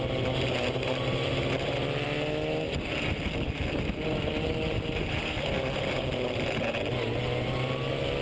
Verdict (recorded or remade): recorded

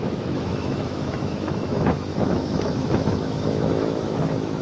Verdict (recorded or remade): remade